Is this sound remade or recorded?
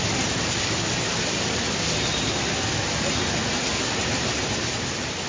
recorded